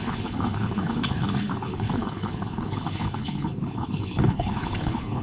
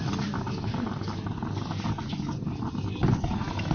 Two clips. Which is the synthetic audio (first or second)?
first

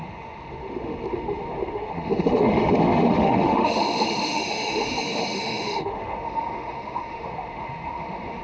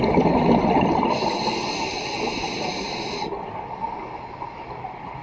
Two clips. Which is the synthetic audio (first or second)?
first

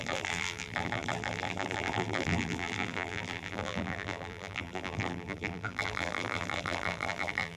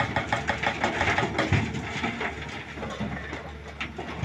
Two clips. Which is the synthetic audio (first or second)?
first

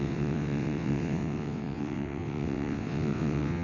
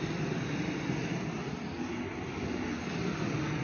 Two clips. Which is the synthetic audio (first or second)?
first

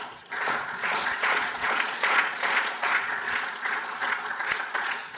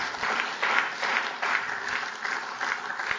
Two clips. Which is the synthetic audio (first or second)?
first